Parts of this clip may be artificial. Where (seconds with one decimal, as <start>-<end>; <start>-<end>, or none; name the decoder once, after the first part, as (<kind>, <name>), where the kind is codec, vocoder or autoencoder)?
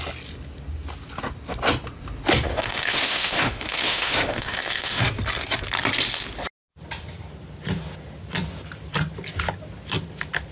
2.5-5.0 (autoencoder, DAC-VAE)